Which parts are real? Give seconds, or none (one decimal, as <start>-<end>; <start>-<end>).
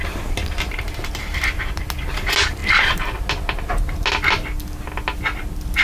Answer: 0.0-5.8